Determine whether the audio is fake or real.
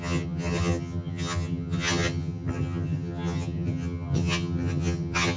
fake